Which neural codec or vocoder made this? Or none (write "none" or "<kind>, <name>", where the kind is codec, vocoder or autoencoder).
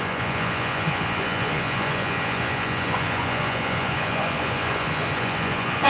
vocoder, Vocos